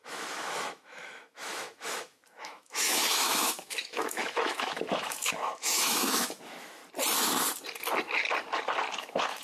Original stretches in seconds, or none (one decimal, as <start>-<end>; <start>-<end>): 6.8-9.0